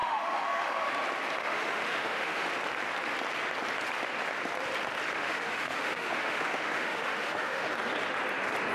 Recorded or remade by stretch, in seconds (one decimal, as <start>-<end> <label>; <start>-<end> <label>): 0.0-0.9 remade; 0.9-1.4 recorded; 1.4-2.5 remade; 2.5-5.1 recorded; 5.1-7.7 remade; 7.7-8.7 recorded